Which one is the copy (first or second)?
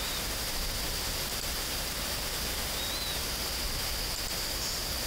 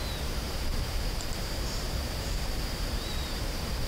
second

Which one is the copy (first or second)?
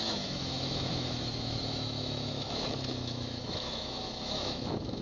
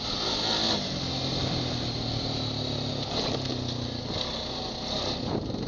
first